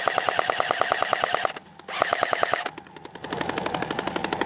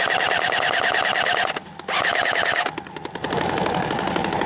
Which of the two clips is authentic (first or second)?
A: first